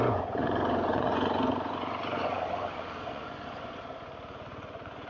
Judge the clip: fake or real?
fake